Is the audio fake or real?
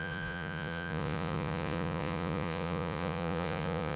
fake